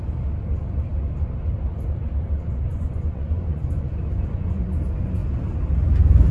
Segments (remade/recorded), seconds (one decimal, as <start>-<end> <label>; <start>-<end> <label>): 0.0-2.7 recorded; 2.7-4.7 remade; 4.7-6.3 recorded